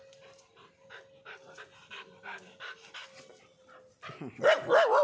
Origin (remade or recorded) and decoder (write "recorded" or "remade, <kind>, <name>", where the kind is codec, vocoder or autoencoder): recorded